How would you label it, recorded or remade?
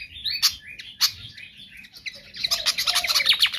recorded